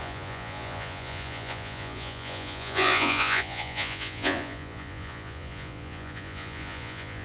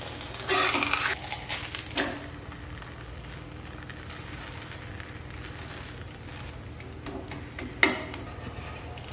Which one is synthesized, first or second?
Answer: first